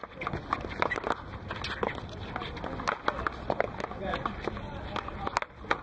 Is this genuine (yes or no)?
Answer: yes